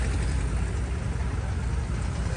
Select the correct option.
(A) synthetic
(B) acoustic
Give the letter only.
B